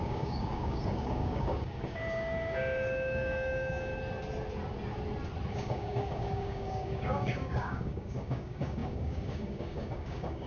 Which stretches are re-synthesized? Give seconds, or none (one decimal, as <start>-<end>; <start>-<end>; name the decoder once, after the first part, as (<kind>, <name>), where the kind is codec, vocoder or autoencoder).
0.0-3.9 (codec, DAC); 5.5-10.5